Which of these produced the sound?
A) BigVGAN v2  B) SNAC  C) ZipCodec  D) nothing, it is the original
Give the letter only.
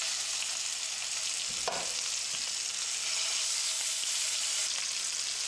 D